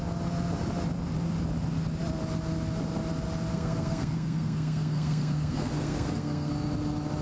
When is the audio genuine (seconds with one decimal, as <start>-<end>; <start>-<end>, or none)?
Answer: 0.0-3.5; 6.5-7.2